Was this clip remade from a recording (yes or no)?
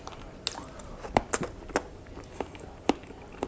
no